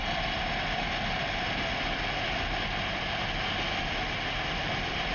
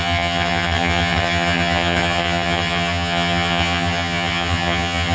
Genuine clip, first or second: first